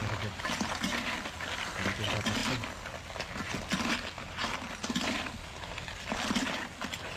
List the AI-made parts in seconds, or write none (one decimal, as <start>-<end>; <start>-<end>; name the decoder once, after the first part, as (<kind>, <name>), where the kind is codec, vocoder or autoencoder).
0.0-0.7 (vocoder, BigVGAN v2)